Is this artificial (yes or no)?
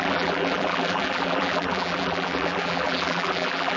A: yes